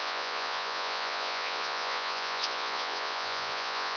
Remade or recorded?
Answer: remade